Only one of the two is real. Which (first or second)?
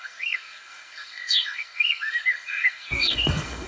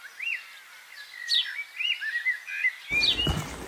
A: second